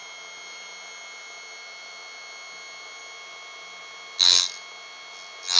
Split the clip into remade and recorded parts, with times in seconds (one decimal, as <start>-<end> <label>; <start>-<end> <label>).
0.0-5.6 recorded